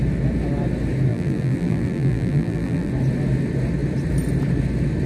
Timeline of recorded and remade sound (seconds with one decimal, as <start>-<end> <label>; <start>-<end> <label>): 0.0-1.1 recorded; 1.1-2.9 remade; 2.9-5.1 recorded